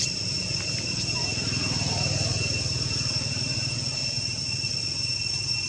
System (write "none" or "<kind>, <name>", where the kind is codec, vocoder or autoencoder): none